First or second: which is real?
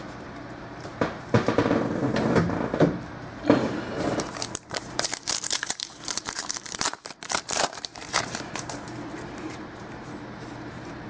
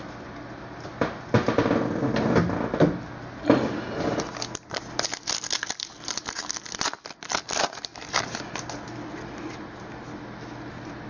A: second